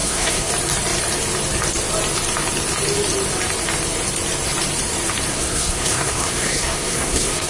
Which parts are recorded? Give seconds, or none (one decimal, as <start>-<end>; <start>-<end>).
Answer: 0.5-5.3